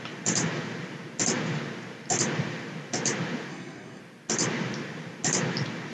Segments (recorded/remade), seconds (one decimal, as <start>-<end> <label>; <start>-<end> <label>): 0.0-3.5 recorded; 3.5-4.0 remade; 4.0-5.9 recorded